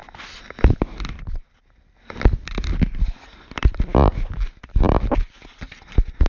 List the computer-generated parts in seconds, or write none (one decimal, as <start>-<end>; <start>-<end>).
none